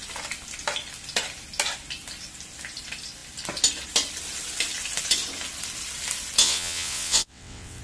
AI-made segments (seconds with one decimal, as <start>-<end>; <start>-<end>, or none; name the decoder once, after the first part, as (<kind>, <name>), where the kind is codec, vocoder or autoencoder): 6.4-7.8 (vocoder, WaveNeXt)